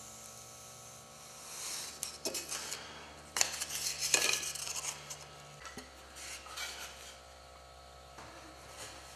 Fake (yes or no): no